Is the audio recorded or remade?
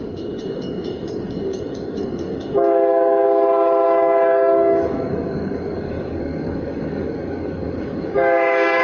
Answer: remade